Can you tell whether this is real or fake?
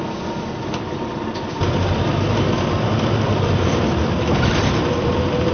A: fake